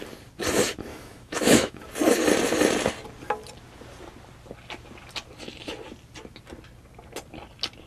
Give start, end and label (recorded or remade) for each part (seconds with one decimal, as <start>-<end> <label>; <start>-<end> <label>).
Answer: 0.0-0.9 recorded; 0.9-1.8 remade; 1.8-7.9 recorded